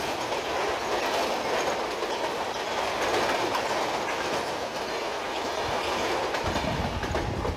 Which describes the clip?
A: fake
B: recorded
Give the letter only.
B